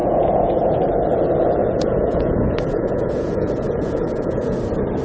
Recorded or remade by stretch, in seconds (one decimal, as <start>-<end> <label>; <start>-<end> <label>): 0.0-0.8 remade; 0.8-1.6 recorded; 1.6-4.6 remade; 4.6-5.0 recorded